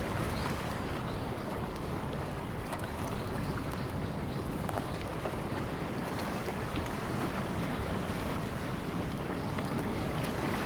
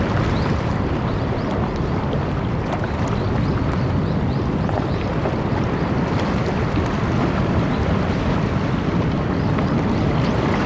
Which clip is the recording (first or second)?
second